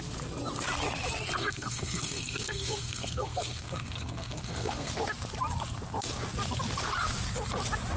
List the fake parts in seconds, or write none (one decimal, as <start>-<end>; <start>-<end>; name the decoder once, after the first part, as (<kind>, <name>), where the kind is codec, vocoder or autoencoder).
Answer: 1.4-4.9 (codec, SNAC)